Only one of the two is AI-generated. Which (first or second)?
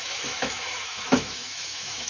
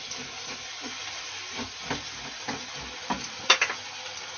first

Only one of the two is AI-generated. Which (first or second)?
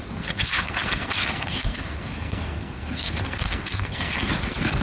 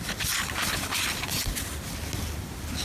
first